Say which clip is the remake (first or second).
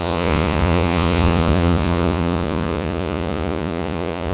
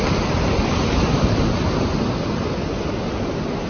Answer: first